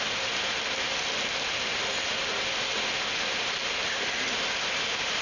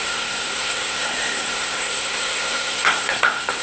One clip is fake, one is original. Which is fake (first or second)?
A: second